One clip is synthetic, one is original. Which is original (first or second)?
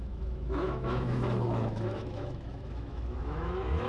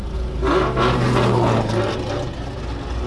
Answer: second